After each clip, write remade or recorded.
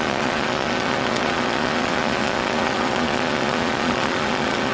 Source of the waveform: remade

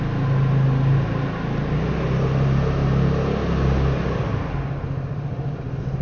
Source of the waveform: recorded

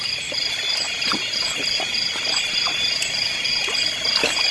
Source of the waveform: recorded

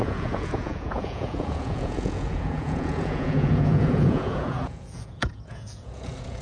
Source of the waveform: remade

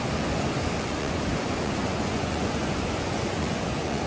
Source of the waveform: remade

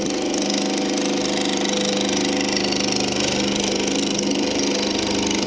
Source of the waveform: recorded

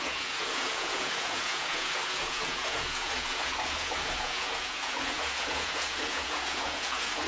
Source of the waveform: remade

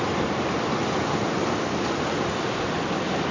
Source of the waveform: recorded